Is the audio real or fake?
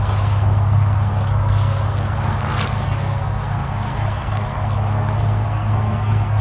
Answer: fake